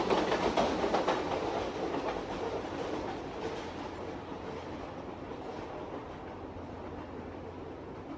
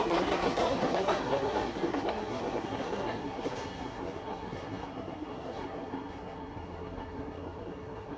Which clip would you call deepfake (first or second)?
second